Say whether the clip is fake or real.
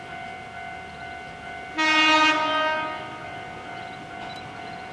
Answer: real